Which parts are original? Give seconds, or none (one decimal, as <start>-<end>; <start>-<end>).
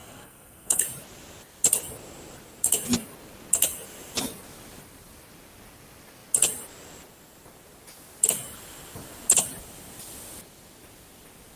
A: 0.8-11.6